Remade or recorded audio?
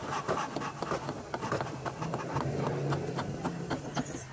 recorded